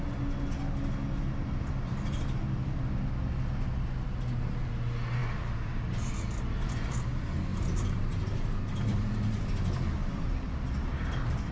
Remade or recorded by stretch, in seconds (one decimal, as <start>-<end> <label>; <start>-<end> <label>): 0.0-7.5 recorded; 7.5-9.4 remade; 9.4-10.0 recorded; 10.0-11.5 remade